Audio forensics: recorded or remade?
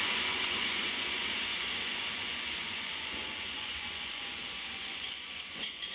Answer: remade